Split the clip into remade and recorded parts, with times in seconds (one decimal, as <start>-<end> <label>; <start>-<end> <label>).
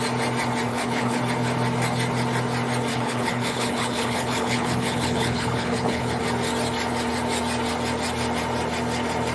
0.0-0.7 recorded; 0.7-1.2 remade; 1.2-2.9 recorded; 2.9-6.2 remade; 6.2-9.3 recorded